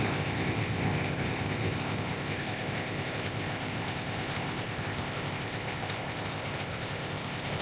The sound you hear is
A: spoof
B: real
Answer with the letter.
A